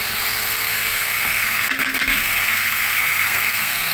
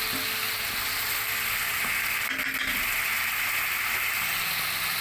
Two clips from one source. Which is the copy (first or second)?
first